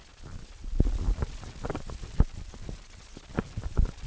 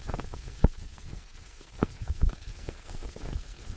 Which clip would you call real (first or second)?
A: first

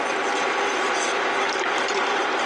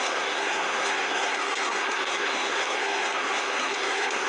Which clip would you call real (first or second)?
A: first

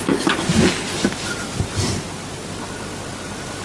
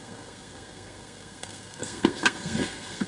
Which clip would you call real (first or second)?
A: first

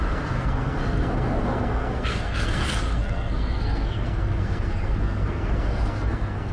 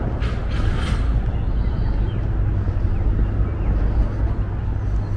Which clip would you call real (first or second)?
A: second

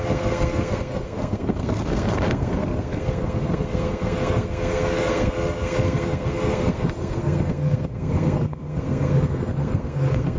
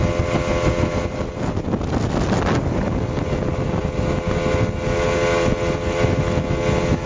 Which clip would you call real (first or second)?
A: second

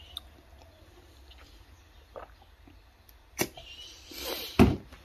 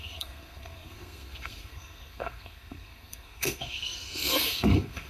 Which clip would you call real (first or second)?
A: first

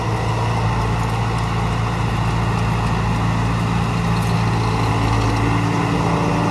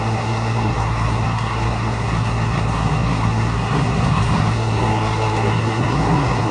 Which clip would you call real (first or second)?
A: first